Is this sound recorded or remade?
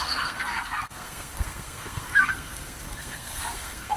remade